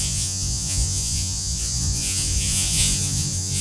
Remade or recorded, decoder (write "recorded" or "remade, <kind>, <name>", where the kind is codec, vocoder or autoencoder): remade, vocoder, Vocos